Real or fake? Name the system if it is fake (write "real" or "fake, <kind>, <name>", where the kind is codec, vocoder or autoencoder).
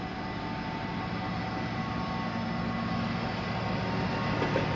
real